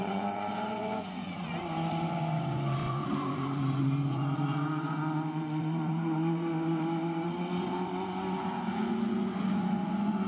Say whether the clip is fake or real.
fake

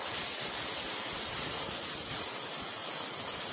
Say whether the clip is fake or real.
real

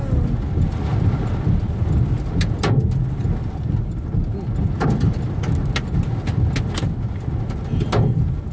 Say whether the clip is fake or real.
real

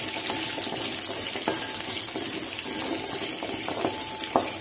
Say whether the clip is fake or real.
real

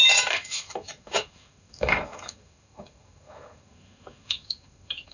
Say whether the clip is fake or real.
fake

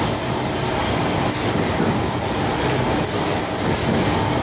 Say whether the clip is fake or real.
real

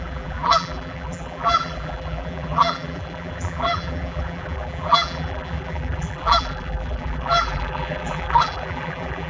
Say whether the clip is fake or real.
fake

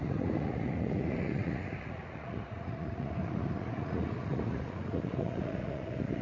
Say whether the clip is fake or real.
fake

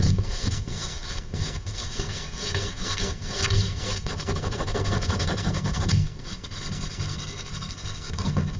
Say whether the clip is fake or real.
fake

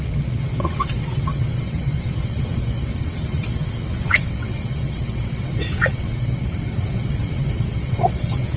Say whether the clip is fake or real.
fake